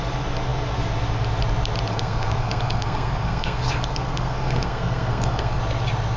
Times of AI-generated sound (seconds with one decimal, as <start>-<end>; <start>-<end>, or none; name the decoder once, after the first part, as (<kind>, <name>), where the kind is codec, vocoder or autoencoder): 1.9-5.6 (codec, SNAC)